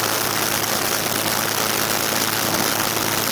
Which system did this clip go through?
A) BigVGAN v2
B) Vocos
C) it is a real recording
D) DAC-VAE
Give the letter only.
C